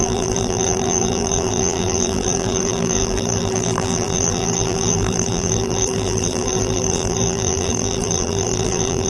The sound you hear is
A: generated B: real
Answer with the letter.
A